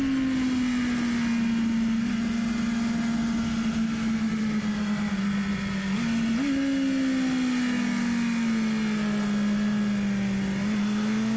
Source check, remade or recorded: recorded